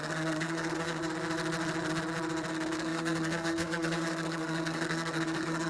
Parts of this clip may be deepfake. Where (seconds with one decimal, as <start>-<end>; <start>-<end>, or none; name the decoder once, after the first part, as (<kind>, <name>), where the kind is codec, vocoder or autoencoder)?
0.0-1.0 (codec, SNAC); 2.5-5.7